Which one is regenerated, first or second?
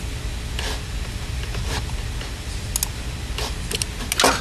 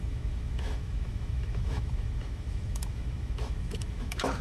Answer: second